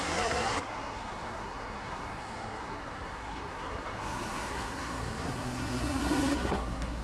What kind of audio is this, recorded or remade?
remade